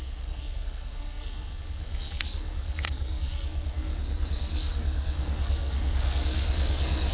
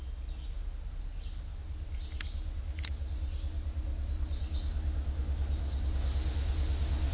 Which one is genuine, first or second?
second